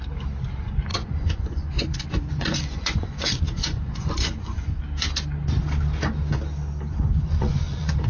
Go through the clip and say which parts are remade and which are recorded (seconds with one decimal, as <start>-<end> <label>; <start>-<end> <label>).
0.0-0.9 recorded; 0.9-4.8 remade; 4.8-7.1 recorded; 7.1-8.1 remade